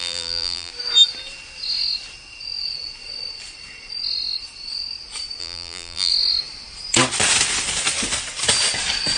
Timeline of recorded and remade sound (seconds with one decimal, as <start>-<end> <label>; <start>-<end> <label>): 0.0-0.7 remade; 0.7-5.4 recorded; 5.4-6.1 remade; 6.1-9.2 recorded